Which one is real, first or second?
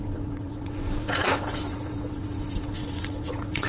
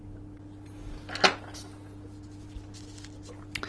second